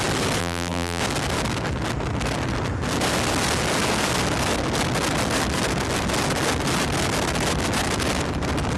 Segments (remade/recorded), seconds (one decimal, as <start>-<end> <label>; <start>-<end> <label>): 0.0-0.4 recorded; 0.4-1.0 remade; 1.0-8.8 recorded